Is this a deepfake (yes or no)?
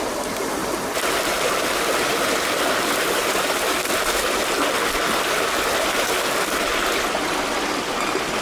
no